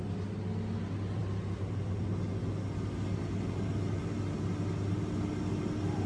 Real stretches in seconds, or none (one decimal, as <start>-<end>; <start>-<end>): 0.0-6.1